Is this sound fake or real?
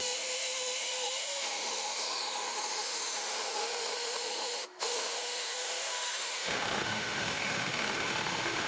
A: fake